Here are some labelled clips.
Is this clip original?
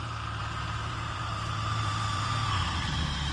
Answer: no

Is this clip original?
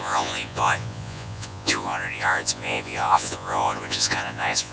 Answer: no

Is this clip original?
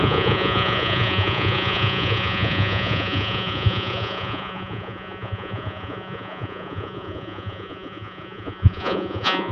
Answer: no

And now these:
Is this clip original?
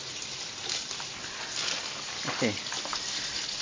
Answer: yes